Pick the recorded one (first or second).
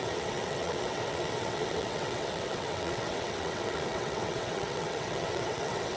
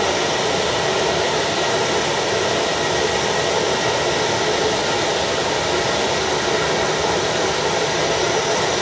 second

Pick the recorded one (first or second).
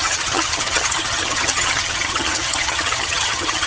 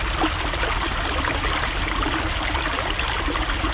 second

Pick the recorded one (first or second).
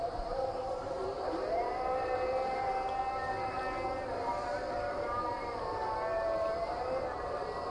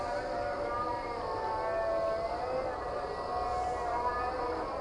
second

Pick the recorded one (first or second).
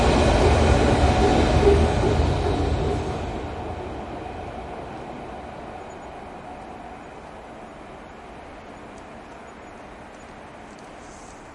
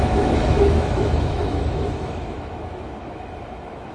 first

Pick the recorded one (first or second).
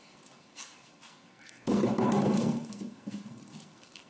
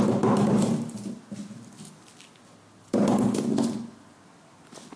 second